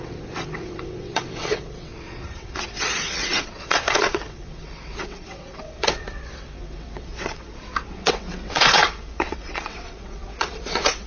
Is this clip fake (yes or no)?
yes